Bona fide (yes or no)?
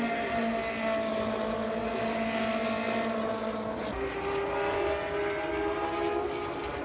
yes